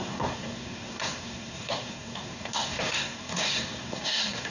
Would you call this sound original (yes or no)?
no